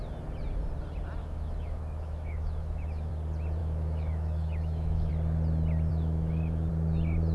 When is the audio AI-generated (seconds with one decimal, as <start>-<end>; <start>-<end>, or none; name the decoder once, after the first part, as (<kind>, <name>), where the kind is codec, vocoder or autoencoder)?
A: 1.2-3.1 (autoencoder, DAC-VAE); 3.6-5.1; 5.9-6.7